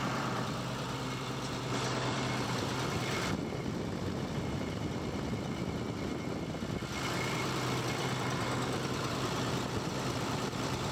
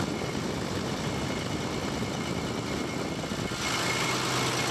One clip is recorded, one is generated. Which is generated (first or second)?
first